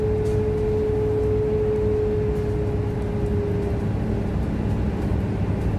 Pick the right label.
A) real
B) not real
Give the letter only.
A